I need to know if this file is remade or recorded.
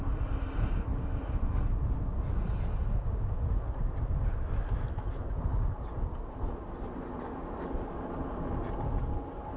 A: recorded